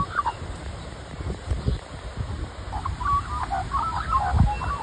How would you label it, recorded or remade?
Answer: recorded